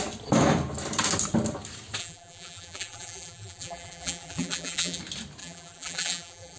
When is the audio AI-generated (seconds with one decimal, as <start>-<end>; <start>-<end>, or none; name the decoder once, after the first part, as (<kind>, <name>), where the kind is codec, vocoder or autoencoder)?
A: 2.0-5.0 (vocoder, BigVGAN v2); 5.4-6.6